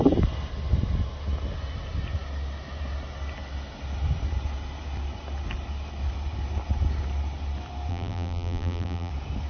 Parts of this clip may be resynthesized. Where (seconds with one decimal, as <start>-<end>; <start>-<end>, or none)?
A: 7.9-9.1